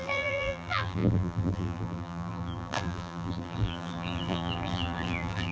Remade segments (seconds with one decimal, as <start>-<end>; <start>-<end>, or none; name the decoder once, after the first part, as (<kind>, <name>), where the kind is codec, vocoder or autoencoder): 0.0-5.5 (vocoder, BigVGAN v2)